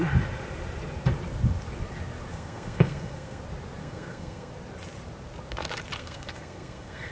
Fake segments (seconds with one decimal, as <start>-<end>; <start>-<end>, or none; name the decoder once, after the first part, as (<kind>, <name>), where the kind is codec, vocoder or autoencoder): 2.3-3.4 (codec, SNAC); 3.8-4.5; 6.0-7.1